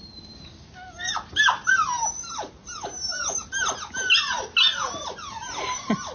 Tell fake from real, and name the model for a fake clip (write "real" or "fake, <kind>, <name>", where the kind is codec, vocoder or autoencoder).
real